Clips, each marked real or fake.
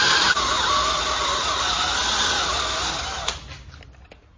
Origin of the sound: real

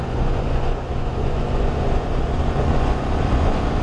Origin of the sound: fake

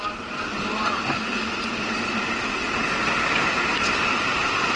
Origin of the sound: real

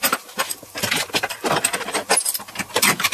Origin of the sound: fake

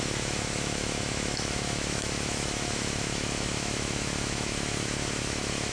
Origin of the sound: fake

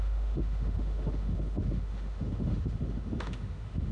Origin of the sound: fake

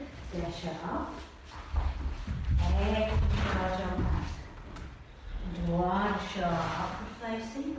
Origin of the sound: real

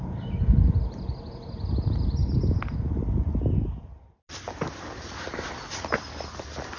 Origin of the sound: real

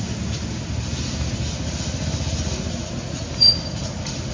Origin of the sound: real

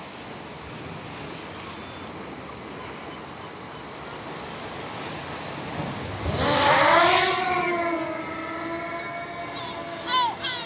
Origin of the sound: real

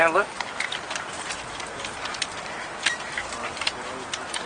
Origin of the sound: real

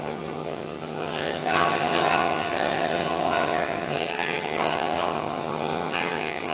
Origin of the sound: fake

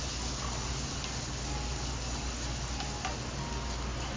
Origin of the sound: real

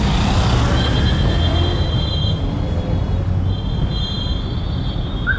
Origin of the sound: real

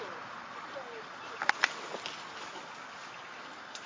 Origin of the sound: real